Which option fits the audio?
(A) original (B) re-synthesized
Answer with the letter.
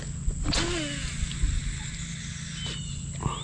A